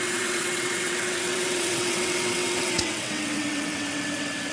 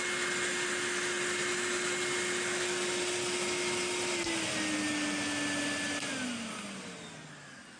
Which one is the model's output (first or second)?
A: first